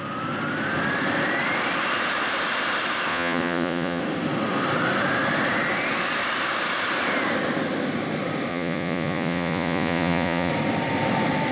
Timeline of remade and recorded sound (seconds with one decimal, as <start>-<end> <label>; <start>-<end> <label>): 0.0-3.1 recorded; 3.1-4.0 remade; 4.0-8.5 recorded; 8.5-10.5 remade; 10.5-11.5 recorded